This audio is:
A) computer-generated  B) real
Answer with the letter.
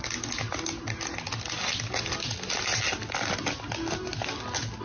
B